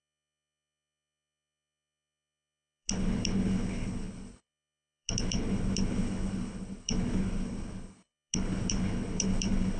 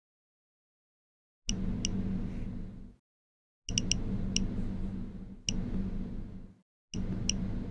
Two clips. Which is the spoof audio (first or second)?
first